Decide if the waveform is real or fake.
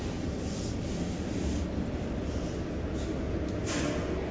real